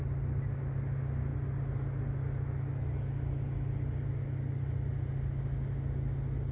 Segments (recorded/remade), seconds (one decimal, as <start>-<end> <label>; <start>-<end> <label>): 0.0-6.5 recorded